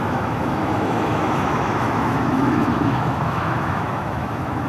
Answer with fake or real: fake